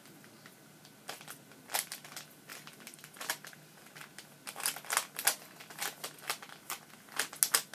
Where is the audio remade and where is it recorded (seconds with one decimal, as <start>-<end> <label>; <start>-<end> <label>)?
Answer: 0.0-7.7 recorded